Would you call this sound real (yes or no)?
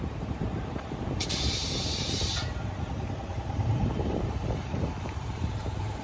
no